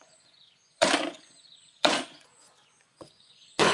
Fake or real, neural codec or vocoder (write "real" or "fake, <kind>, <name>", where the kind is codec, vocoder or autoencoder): fake, vocoder, Vocos